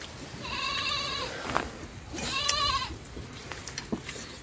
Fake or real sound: real